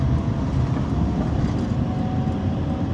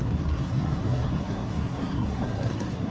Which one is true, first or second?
first